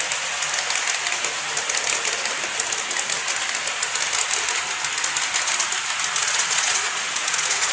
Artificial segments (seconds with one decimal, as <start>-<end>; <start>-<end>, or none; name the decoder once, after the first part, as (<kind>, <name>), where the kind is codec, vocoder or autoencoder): 6.2-7.7 (vocoder, Vocos)